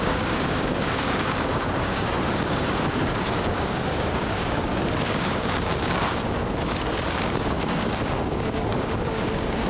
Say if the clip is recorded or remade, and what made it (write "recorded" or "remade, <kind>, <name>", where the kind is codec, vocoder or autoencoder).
remade, codec, DAC